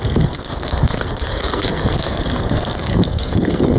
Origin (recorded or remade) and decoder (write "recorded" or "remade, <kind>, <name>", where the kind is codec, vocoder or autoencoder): remade, codec, SNAC